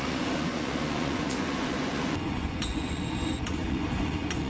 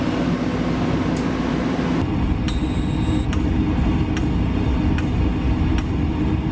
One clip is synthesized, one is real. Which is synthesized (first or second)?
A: first